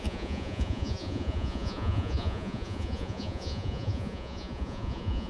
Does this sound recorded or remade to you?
remade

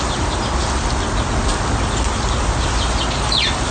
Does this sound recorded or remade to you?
recorded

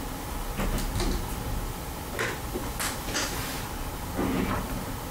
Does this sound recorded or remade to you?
recorded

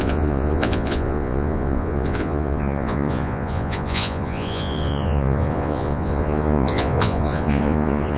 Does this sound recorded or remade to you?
remade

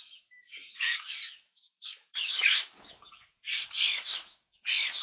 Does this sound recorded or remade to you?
remade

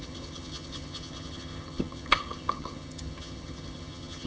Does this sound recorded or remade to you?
remade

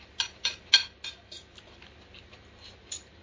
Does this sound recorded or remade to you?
recorded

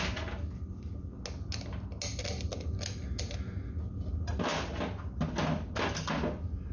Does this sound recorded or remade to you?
recorded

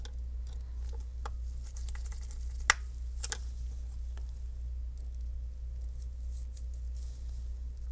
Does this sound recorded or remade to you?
recorded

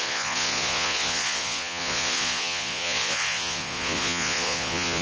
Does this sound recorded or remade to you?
remade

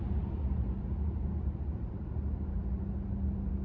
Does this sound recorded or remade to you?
recorded